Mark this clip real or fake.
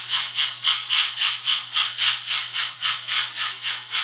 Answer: fake